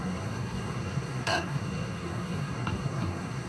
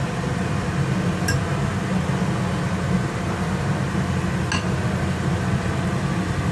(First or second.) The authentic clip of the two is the second